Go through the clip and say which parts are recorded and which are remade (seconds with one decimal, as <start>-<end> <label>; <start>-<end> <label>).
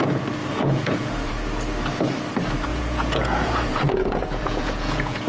0.0-0.4 recorded; 0.4-1.3 remade; 1.3-2.7 recorded; 2.7-5.3 remade